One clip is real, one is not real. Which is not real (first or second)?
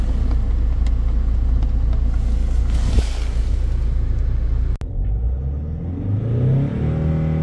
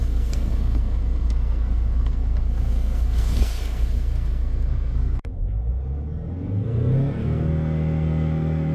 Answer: second